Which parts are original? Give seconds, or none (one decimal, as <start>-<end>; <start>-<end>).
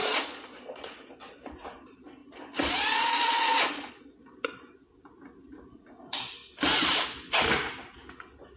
1.1-2.2; 4.5-8.6